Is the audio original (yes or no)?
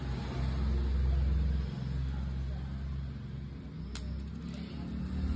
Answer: yes